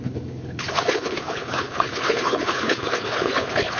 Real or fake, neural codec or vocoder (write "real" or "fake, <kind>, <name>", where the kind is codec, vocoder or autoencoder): fake, codec, HILCodec